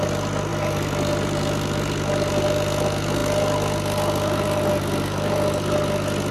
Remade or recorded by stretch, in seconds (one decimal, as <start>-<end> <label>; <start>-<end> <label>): 0.0-6.3 recorded